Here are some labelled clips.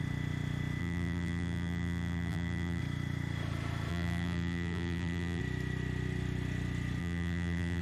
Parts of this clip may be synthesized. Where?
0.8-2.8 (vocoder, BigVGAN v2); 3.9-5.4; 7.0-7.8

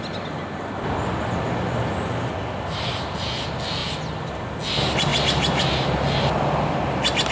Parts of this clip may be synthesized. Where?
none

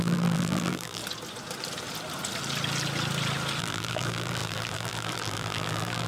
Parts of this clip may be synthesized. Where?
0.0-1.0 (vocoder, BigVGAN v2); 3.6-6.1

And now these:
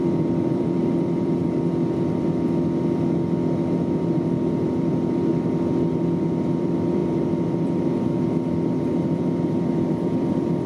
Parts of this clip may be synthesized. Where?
0.0-1.4 (vocoder, BigVGAN v2); 4.0-5.3; 6.6-10.7

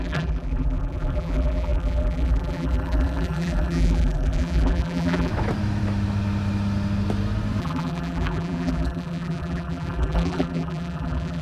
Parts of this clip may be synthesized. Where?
0.0-5.3 (vocoder, BigVGAN v2); 7.6-11.4

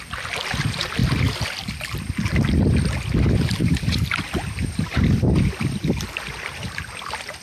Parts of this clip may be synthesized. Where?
3.6-5.3 (vocoder, BigVGAN v2)

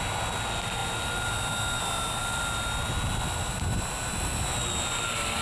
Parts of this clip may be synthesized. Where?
none